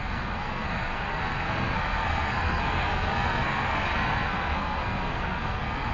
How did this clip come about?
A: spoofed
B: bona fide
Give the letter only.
A